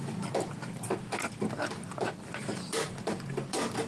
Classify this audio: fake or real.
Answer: real